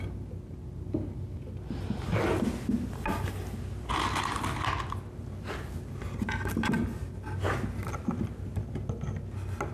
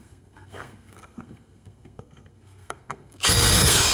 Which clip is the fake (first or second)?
second